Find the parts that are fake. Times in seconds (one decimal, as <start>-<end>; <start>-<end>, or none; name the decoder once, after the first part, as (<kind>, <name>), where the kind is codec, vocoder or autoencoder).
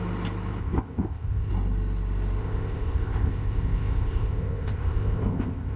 0.6-1.5 (codec, ZipCodec); 2.4-5.8